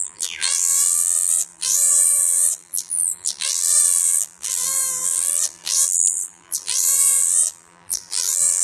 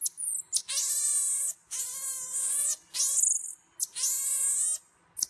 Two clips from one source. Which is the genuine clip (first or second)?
second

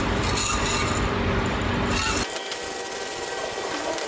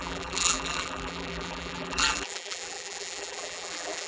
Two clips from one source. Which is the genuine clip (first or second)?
first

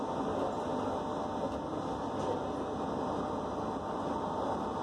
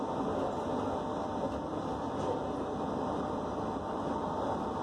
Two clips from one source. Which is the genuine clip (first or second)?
first